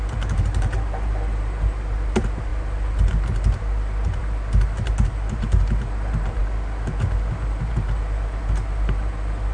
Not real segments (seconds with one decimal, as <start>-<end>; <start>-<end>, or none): none